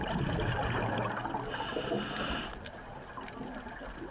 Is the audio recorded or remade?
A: recorded